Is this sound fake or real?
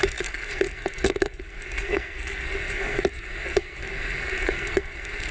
fake